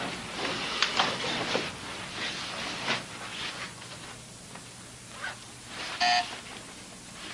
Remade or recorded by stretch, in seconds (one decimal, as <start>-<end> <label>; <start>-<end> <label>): 0.0-3.3 recorded; 3.3-4.0 remade; 4.0-7.3 recorded